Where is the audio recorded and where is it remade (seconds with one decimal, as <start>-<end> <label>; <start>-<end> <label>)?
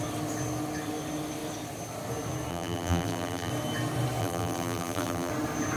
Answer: 0.0-2.5 recorded; 2.5-3.5 remade; 3.5-4.2 recorded; 4.2-5.3 remade; 5.3-5.8 recorded